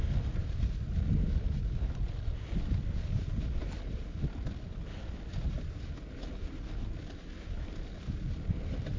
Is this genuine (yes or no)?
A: yes